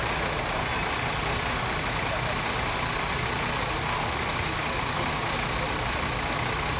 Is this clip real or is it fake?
real